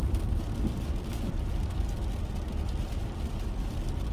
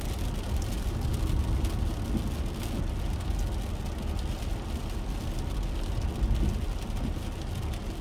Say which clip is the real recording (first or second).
second